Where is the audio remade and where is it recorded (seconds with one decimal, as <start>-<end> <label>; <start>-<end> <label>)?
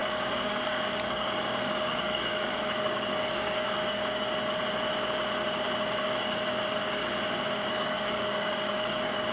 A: 0.0-3.8 remade; 3.8-6.0 recorded; 6.0-7.0 remade; 7.0-7.7 recorded; 7.7-9.3 remade